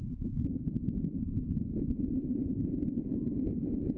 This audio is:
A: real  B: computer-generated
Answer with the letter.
B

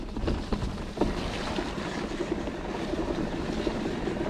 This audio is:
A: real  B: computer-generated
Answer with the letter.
B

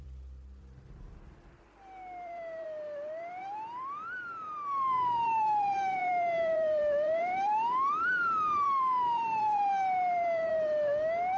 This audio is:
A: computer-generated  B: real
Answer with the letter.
A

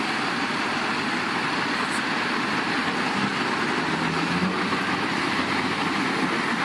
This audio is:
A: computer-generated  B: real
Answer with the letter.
B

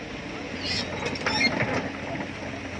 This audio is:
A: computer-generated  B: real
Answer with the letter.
B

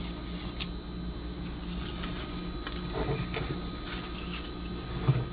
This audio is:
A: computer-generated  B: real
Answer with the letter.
B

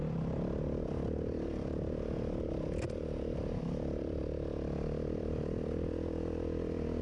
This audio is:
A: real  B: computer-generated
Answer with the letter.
B